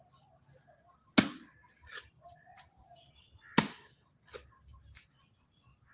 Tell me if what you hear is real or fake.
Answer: real